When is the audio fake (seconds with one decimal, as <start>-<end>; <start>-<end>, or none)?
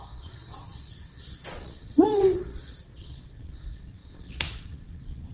0.0-5.3